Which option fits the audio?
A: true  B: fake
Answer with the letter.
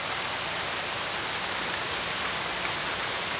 A